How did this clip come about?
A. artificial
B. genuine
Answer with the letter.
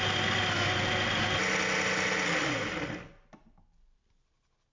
B